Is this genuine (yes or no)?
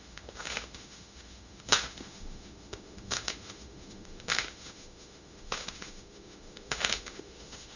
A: no